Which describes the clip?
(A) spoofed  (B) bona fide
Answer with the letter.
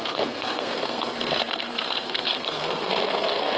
A